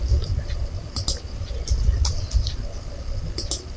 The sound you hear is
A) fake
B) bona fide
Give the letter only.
B